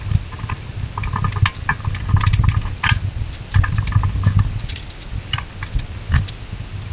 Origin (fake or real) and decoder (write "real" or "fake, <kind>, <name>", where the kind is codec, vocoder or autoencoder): real